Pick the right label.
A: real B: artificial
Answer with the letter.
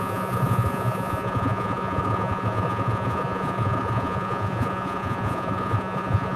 B